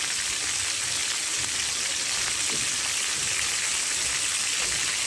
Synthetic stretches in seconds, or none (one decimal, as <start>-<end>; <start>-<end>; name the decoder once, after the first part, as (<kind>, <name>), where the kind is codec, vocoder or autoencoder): none